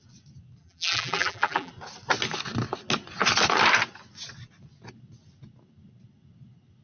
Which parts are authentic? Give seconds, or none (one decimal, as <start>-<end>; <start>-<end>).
0.0-0.6; 1.7-6.8